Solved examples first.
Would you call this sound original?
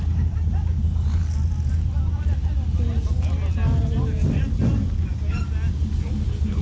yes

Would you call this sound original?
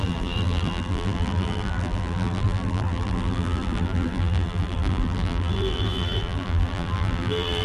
no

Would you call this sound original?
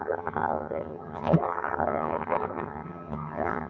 no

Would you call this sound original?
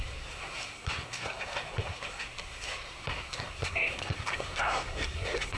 no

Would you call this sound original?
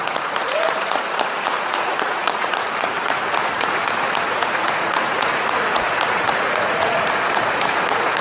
no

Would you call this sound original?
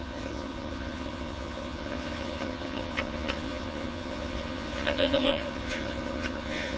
no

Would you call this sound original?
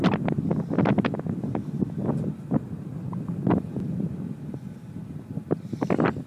yes